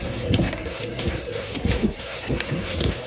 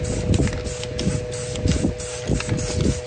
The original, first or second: second